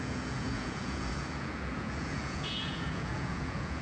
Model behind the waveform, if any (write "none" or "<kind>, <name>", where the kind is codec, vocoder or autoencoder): vocoder, Vocos